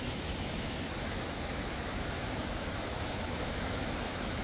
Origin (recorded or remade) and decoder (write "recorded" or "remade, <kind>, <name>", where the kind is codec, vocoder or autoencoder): remade, autoencoder, DAC-VAE